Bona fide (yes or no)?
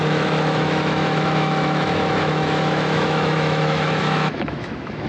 no